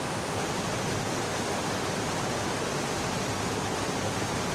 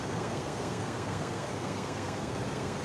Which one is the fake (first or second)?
second